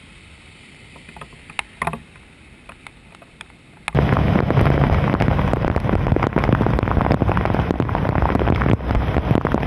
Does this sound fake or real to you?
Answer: real